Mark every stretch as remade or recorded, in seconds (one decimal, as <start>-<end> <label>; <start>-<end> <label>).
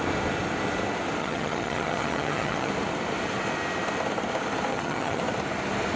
0.0-1.2 recorded; 1.2-2.7 remade; 2.7-4.7 recorded; 4.7-5.2 remade; 5.2-6.0 recorded